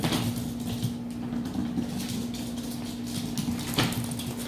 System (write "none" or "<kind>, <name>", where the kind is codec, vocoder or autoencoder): none